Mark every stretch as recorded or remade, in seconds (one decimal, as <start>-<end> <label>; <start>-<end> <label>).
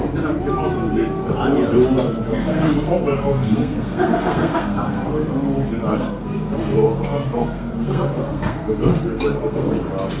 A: 0.0-2.4 recorded; 2.4-5.1 remade; 5.1-5.9 recorded; 5.9-9.7 remade; 9.7-10.2 recorded